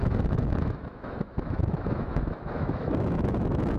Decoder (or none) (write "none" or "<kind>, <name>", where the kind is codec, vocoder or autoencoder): autoencoder, DAC-VAE